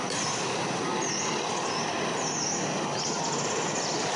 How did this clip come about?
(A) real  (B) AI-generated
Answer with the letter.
A